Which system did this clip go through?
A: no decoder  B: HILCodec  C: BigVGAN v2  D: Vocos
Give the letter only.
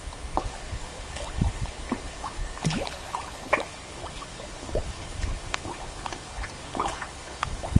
B